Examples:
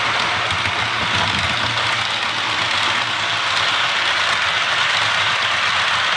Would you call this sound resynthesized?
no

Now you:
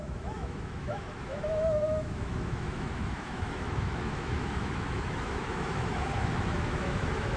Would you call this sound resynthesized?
yes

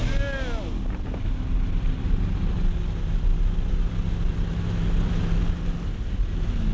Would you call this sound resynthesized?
no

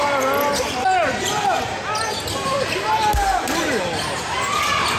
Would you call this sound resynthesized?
no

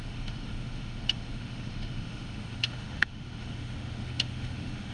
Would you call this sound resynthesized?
yes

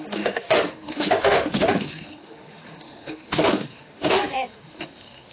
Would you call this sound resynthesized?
yes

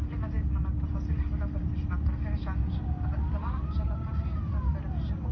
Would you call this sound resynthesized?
no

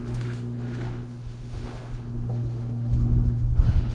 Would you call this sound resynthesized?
yes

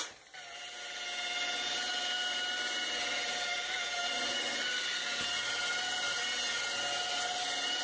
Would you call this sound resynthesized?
no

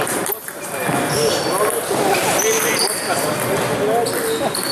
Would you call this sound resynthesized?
no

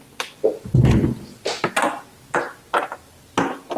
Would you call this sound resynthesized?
no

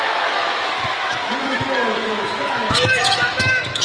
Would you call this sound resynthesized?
yes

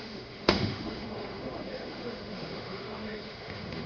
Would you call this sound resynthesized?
yes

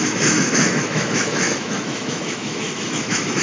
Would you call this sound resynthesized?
yes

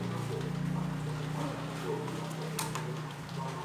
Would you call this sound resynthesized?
no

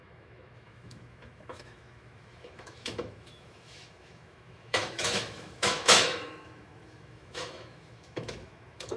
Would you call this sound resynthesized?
yes